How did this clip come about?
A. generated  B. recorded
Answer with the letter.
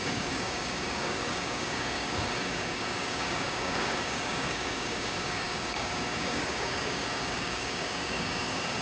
A